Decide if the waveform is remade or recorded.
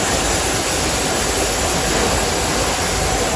recorded